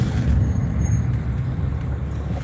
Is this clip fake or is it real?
real